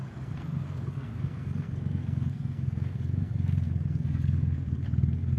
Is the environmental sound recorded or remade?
remade